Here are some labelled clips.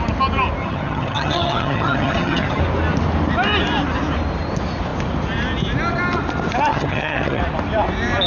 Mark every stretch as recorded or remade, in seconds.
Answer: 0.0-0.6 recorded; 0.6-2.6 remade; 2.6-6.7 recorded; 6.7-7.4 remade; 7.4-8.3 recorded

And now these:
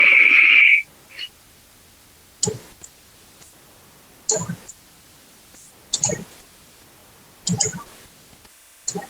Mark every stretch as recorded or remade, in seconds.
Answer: 0.0-9.1 recorded

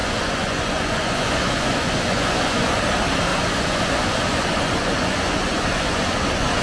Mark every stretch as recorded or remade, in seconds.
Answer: 0.0-2.8 remade; 2.8-3.3 recorded; 3.3-6.6 remade

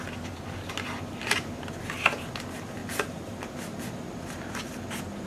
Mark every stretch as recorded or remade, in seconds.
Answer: 0.0-5.3 recorded

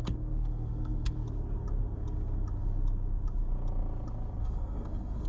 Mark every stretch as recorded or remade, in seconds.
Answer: 0.0-1.2 remade; 1.2-4.4 recorded; 4.4-5.3 remade

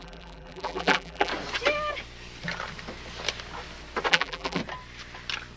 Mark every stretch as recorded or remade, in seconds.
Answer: 0.0-1.3 remade; 1.3-4.1 recorded; 4.1-4.6 remade; 4.6-5.6 recorded

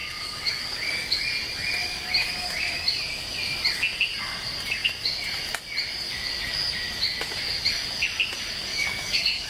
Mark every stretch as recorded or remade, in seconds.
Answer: 0.0-1.2 remade; 1.2-1.8 recorded; 1.8-2.9 remade; 2.9-8.7 recorded; 8.7-9.5 remade